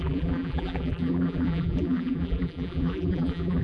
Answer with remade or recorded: remade